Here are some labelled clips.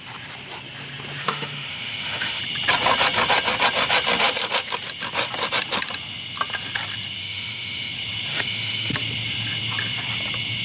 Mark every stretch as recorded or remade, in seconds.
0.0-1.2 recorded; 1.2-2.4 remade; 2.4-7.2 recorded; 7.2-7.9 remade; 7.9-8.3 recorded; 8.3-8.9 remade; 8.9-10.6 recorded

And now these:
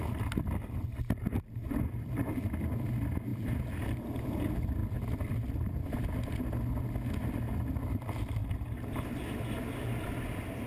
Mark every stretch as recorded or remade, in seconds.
0.0-4.8 recorded; 4.8-6.9 remade; 6.9-8.4 recorded; 8.4-9.5 remade; 9.5-10.7 recorded

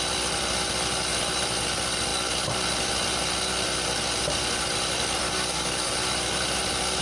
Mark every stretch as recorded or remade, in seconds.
0.0-5.2 recorded; 5.2-5.9 remade; 5.9-7.0 recorded